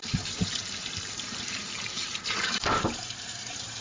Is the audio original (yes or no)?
no